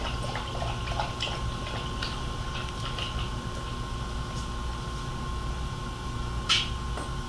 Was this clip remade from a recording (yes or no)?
no